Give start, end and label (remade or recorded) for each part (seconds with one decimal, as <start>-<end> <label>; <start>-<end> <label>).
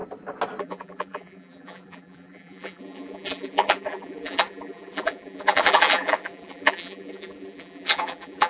0.0-0.6 recorded; 0.6-8.5 remade